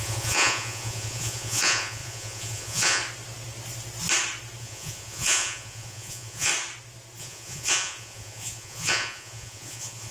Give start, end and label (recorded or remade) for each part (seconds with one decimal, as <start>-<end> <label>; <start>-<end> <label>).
0.0-3.0 remade; 3.0-4.6 recorded; 4.6-6.5 remade; 6.5-7.2 recorded; 7.2-10.1 remade